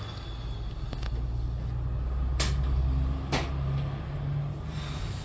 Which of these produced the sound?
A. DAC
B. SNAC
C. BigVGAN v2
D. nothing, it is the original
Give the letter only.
D